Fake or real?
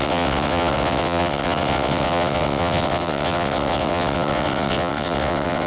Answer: fake